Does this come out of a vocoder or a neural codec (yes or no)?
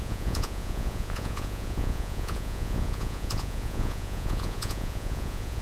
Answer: yes